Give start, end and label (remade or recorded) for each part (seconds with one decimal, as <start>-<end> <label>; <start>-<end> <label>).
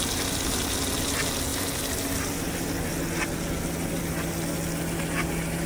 0.0-5.7 recorded